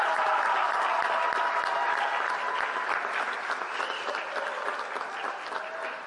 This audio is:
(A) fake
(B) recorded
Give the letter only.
B